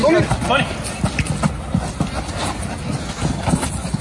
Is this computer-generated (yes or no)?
no